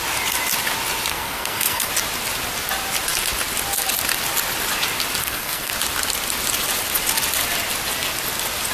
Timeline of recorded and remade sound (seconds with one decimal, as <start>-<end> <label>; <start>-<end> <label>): 0.0-1.1 recorded; 1.1-1.9 remade; 1.9-5.2 recorded; 5.2-5.7 remade; 5.7-8.7 recorded